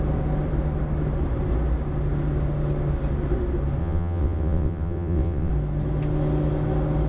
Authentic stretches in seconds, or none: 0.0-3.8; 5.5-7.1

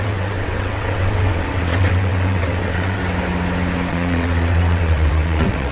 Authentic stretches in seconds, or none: 3.0-3.9